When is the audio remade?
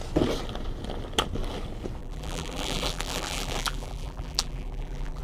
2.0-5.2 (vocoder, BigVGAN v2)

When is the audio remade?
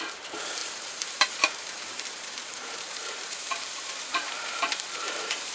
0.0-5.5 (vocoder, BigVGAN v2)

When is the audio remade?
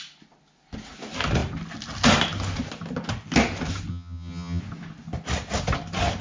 3.9-4.6 (vocoder, HiFi-GAN)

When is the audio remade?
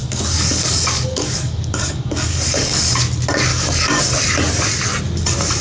0.0-3.0 (codec, DAC); 3.5-4.0